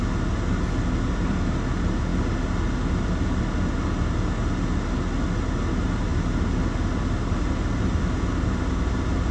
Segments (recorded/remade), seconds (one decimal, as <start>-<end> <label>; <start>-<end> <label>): 0.0-9.3 recorded